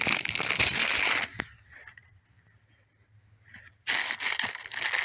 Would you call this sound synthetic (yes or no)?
no